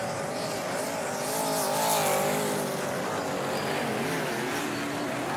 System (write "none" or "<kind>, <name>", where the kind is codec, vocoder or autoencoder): none